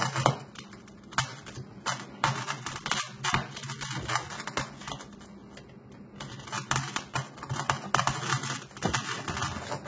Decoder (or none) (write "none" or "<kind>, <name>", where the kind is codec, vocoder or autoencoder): none